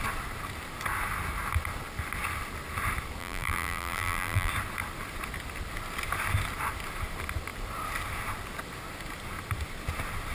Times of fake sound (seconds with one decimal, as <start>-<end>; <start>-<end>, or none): 3.2-4.5